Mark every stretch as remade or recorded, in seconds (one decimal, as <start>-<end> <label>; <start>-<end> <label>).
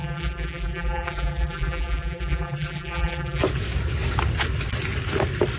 0.0-3.4 remade; 3.4-5.6 recorded